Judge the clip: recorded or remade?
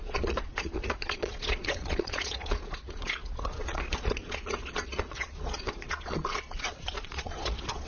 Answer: remade